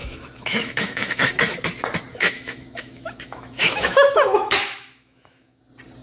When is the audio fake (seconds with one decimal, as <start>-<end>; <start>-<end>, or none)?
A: 0.0-1.3; 2.1-5.6